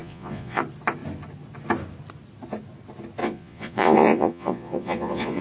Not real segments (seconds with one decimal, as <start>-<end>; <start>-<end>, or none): 0.0-0.6; 3.2-5.4